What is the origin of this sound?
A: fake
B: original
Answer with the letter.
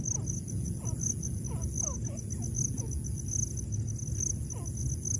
B